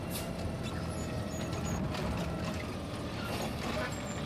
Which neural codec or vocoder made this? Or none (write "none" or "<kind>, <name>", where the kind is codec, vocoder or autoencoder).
none